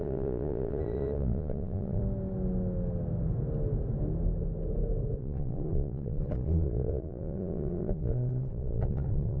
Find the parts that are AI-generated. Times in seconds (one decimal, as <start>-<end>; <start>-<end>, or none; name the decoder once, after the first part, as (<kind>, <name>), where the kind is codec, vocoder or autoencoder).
0.0-2.0 (vocoder, Vocos); 5.2-9.4